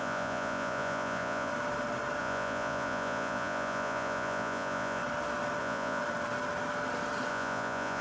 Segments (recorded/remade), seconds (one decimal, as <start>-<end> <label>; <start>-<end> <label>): 0.0-1.5 remade; 1.5-2.2 recorded; 2.2-5.0 remade; 5.0-5.6 recorded; 5.6-6.0 remade; 6.0-7.3 recorded; 7.3-8.0 remade